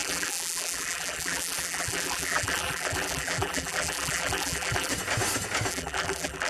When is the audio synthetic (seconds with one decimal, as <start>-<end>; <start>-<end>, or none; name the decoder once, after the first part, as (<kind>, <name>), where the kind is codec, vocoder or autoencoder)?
0.0-4.9 (vocoder, BigVGAN v2); 5.7-6.5